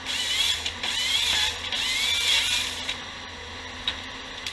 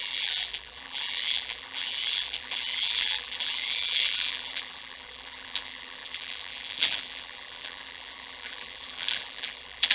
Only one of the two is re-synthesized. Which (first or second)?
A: second